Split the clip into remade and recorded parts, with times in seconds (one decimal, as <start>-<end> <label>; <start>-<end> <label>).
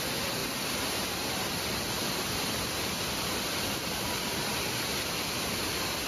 0.0-0.4 recorded; 0.4-1.3 remade; 1.3-2.0 recorded; 2.0-5.5 remade; 5.5-6.1 recorded